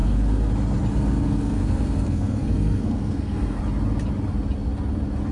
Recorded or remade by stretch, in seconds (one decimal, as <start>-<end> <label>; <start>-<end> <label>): 0.0-0.5 remade; 0.5-0.9 recorded; 0.9-3.6 remade; 3.6-5.3 recorded